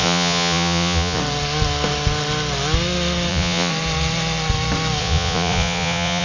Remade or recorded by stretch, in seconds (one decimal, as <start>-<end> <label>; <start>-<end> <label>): 0.0-1.2 remade; 1.2-3.3 recorded; 3.3-3.7 remade; 3.7-5.0 recorded; 5.0-6.2 remade